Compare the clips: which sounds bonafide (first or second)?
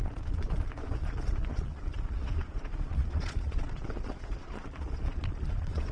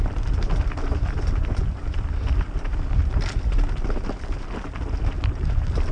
second